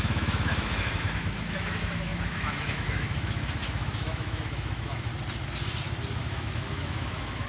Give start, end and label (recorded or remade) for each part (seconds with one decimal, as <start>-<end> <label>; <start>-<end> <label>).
0.0-5.1 remade; 5.1-6.2 recorded; 6.2-7.5 remade